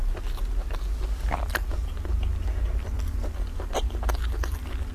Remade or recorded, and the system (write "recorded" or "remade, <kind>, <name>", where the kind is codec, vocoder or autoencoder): recorded